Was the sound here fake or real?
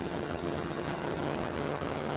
fake